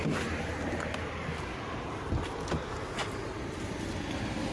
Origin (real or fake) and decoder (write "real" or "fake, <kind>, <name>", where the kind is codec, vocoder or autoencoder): real